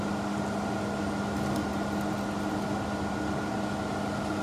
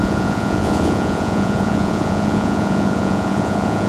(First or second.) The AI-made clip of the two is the second